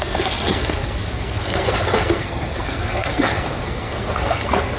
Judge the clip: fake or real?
fake